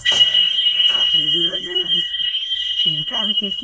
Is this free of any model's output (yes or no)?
no